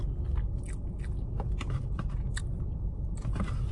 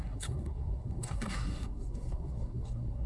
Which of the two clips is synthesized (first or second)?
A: second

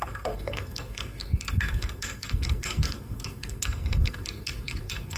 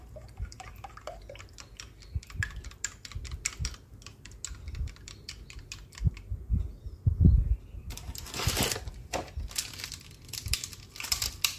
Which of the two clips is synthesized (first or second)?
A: first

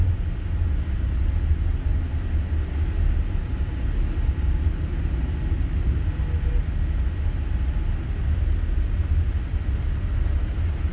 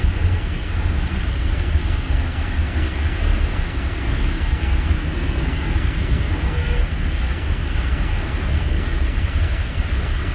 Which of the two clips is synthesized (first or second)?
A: second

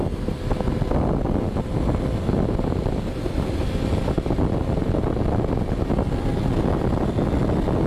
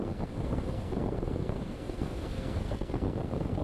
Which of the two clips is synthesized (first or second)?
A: second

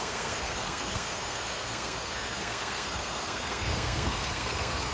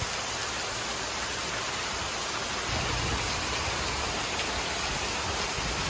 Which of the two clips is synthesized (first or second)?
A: first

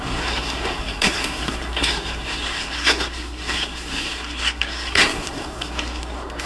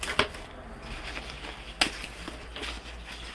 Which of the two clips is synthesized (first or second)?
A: first